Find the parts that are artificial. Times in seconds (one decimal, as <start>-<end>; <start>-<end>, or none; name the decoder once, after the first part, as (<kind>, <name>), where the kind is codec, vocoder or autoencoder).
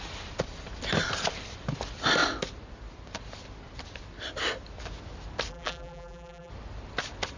5.5-6.5 (vocoder, BigVGAN v2)